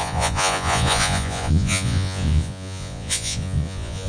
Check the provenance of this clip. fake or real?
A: fake